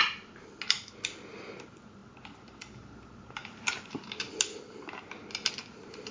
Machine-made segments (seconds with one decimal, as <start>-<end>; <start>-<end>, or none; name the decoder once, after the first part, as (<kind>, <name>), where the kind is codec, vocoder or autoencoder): none